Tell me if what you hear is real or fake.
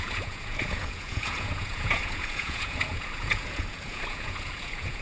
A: fake